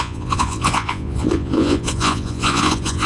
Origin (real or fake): fake